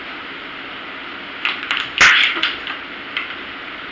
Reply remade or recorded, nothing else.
recorded